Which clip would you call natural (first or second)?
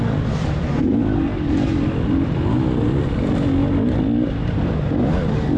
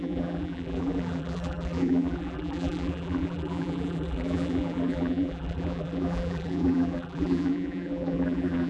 first